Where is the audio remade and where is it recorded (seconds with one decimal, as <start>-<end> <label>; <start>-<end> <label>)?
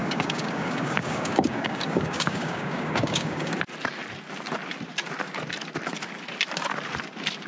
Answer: 0.0-3.5 remade; 3.5-7.5 recorded